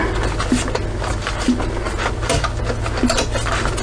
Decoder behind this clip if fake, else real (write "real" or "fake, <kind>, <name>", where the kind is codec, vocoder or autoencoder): real